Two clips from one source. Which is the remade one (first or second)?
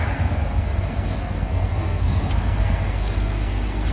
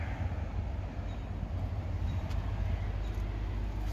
first